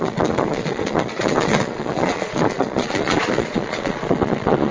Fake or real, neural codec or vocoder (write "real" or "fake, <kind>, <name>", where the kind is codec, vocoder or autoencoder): fake, vocoder, Vocos